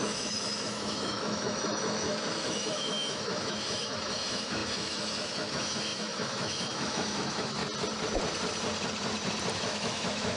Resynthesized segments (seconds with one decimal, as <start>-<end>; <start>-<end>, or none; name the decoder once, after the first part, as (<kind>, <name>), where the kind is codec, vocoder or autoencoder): 0.0-7.6 (autoencoder, DAC-VAE); 9.5-10.4